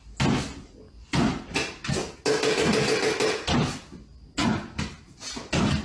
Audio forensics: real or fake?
real